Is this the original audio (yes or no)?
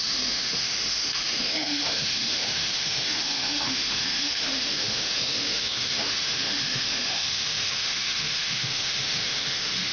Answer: no